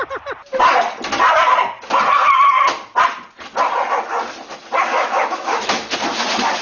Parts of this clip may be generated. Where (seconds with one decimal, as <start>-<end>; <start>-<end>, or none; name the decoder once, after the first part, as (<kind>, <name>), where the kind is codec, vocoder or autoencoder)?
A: 4.9-5.9 (autoencoder, DAC-VAE)